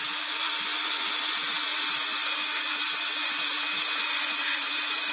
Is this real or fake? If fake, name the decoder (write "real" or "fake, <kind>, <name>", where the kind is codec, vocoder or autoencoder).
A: fake, vocoder, Vocos